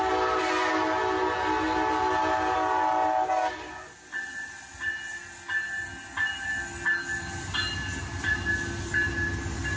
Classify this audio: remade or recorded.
recorded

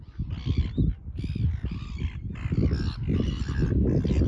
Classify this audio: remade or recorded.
recorded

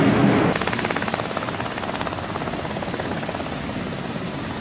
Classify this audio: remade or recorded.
recorded